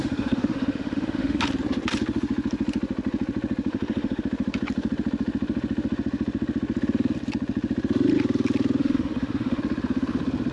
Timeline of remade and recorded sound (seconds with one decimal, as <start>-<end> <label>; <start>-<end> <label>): 0.0-1.4 remade; 1.4-3.7 recorded; 3.7-4.2 remade; 4.2-8.8 recorded; 8.8-9.6 remade; 9.6-10.5 recorded